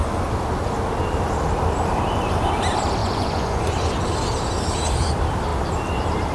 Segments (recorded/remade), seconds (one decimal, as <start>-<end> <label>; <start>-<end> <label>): 0.0-3.0 recorded; 3.0-3.6 remade; 3.6-6.3 recorded

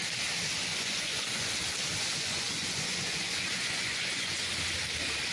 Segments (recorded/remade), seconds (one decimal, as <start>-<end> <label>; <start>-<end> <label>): 0.0-0.7 recorded; 0.7-1.5 remade; 1.5-1.9 recorded; 1.9-4.5 remade; 4.5-5.3 recorded

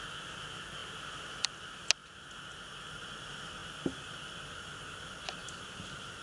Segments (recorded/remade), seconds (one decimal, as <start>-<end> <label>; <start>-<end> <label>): 0.0-6.2 recorded

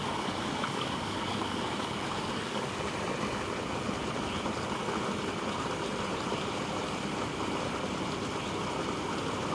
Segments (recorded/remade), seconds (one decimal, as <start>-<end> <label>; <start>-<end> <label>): 0.0-2.8 remade; 2.8-9.5 recorded

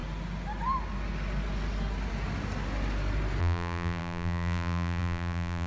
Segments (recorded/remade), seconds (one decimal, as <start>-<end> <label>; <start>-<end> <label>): 0.0-3.4 recorded; 3.4-5.7 remade